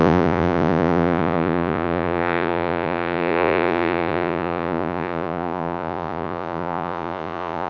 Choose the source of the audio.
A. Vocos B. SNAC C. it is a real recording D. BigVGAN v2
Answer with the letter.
A